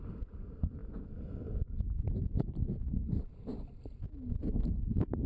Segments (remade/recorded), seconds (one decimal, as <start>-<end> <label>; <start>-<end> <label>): 0.0-5.3 recorded